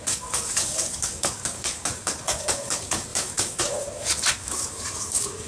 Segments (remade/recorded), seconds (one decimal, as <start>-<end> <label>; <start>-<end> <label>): 0.0-5.5 remade